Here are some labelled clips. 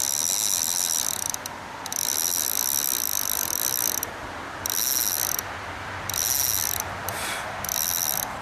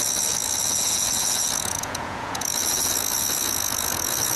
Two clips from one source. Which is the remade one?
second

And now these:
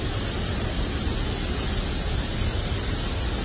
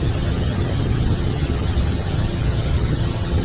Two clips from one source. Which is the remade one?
second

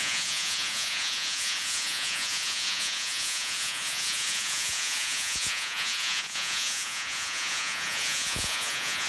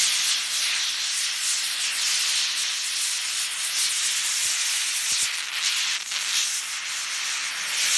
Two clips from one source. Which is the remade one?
first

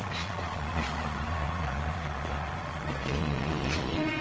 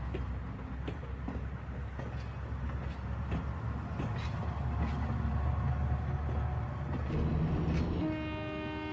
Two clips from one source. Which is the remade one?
first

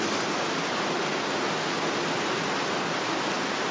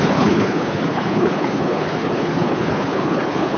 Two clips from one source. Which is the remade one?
second